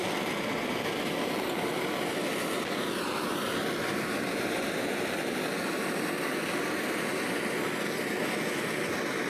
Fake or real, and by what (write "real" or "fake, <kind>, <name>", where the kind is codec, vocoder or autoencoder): fake, vocoder, BigVGAN v2